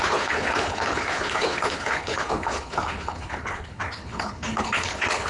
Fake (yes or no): yes